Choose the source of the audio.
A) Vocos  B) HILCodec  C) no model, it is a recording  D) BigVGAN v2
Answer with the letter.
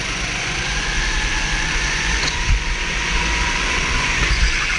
A